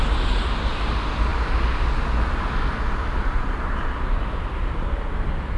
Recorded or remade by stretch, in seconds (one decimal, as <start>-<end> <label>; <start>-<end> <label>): 0.0-5.6 recorded